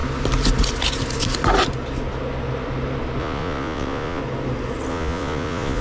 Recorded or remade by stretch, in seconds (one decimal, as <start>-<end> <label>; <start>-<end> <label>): 0.0-3.2 recorded; 3.2-4.2 remade; 4.2-4.9 recorded; 4.9-5.8 remade